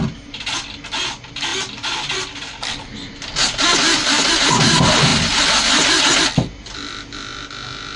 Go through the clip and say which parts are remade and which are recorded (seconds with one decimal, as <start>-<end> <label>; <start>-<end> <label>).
0.0-8.0 recorded